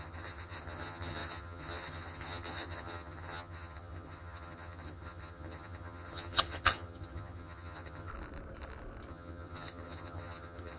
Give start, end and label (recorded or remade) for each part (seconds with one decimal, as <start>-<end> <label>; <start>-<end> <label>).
0.0-8.1 remade; 8.1-9.1 recorded; 9.1-10.8 remade